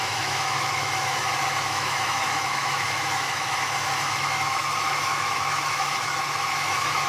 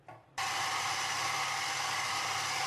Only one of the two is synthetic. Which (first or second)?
first